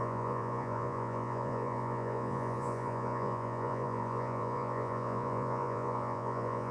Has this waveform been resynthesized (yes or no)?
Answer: yes